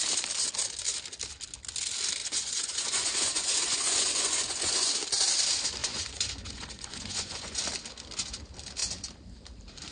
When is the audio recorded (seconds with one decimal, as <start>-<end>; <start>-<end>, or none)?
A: 0.0-2.2; 4.9-5.8; 7.6-9.9